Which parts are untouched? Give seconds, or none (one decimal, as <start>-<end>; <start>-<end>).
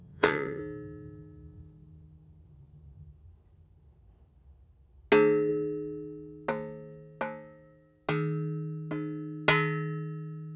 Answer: 0.6-10.6